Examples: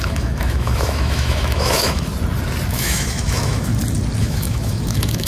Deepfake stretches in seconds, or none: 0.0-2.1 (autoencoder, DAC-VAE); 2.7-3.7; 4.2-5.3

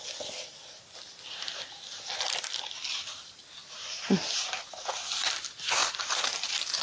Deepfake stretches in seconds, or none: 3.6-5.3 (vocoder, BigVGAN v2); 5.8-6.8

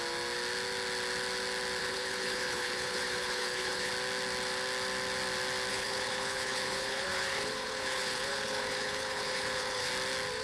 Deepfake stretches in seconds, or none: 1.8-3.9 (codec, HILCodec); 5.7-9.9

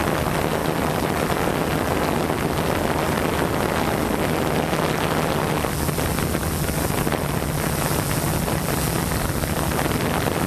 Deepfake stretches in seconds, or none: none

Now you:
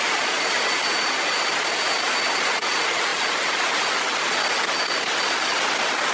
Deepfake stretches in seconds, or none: none